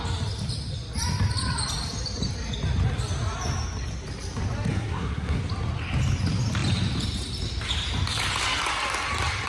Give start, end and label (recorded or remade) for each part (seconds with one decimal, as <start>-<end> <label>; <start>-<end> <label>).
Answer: 0.0-4.7 recorded; 4.7-5.4 remade; 5.4-9.5 recorded